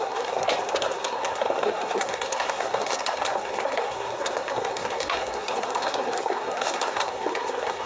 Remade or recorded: remade